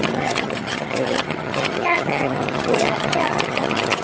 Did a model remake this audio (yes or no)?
yes